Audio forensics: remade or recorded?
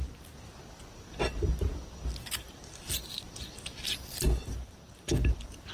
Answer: recorded